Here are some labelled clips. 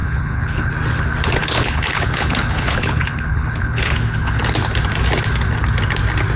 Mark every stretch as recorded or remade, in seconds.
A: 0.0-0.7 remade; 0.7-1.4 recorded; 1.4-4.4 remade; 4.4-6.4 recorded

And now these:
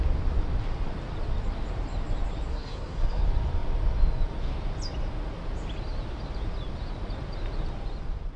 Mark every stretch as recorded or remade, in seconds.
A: 0.0-2.5 recorded; 2.5-3.2 remade; 3.2-8.4 recorded

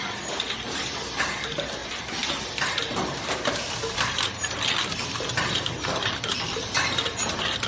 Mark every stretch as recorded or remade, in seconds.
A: 0.0-7.7 remade

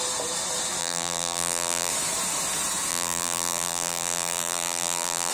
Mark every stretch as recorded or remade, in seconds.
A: 0.0-0.8 recorded; 0.8-1.9 remade; 1.9-2.9 recorded; 2.9-5.3 remade